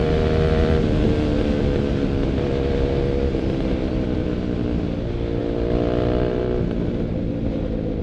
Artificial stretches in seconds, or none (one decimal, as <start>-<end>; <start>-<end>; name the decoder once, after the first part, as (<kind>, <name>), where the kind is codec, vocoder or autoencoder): none